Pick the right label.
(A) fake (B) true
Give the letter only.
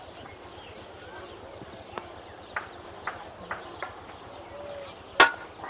B